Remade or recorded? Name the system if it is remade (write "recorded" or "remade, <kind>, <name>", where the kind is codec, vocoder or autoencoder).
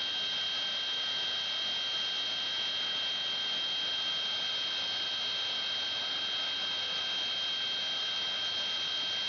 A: recorded